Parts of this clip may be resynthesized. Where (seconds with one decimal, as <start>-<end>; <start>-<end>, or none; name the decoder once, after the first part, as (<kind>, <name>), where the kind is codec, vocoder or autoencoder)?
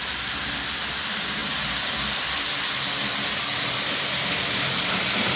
1.4-4.6 (vocoder, BigVGAN v2)